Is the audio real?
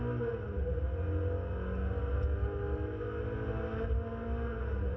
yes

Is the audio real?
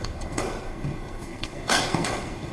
no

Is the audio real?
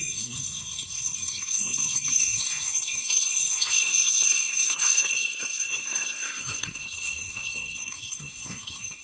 no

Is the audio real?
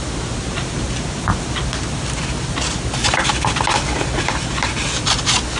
yes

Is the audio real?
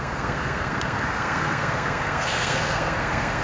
no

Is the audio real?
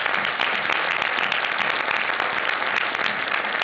yes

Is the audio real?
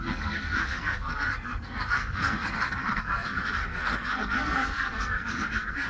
no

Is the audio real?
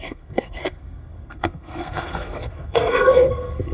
no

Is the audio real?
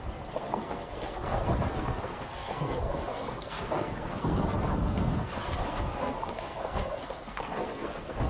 no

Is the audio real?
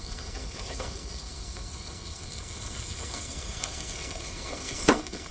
no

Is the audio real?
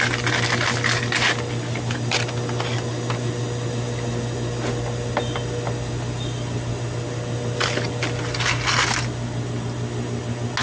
yes